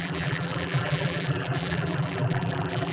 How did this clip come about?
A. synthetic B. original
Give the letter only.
A